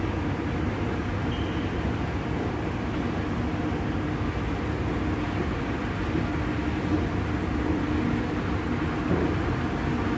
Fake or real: real